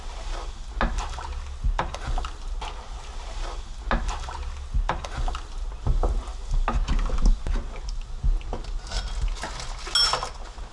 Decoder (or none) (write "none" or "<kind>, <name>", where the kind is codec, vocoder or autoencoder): none